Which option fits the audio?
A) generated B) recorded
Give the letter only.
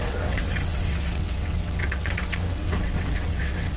A